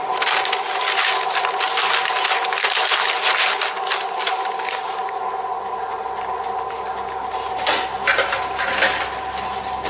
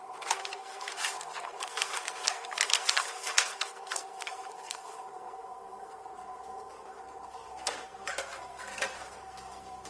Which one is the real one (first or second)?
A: first